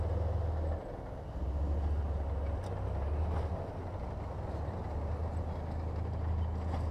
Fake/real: real